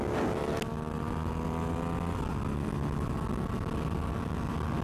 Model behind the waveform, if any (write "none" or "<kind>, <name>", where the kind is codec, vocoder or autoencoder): none